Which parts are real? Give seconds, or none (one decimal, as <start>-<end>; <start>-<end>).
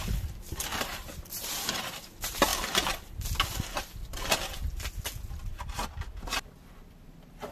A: 0.0-0.7; 1.8-7.5